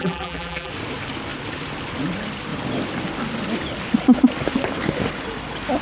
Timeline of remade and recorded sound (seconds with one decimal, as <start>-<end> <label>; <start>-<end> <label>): 0.0-0.7 remade; 0.7-5.8 recorded